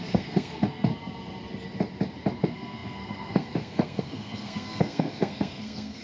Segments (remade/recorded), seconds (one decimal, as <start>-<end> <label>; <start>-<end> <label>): 0.0-0.9 remade; 0.9-2.4 recorded; 2.4-6.0 remade